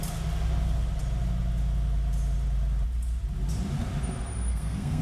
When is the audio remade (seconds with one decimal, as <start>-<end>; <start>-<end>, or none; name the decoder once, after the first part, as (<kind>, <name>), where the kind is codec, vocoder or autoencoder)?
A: 4.5-5.0 (codec, SNAC)